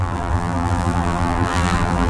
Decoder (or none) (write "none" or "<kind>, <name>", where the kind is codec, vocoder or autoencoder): vocoder, BigVGAN v2